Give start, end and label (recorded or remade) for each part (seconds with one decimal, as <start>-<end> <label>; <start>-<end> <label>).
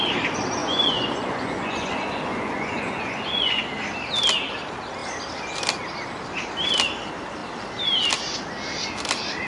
0.0-0.6 recorded; 0.6-3.6 remade; 3.6-9.5 recorded